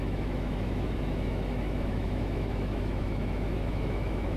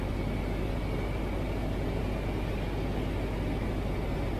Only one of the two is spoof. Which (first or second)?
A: first